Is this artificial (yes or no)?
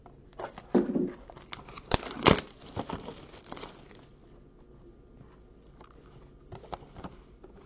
no